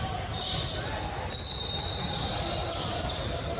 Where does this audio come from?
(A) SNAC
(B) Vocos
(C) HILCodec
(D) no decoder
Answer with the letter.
D